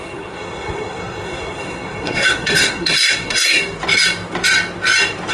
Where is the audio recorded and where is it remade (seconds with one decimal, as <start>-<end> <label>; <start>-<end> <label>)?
0.0-3.6 remade; 3.6-5.3 recorded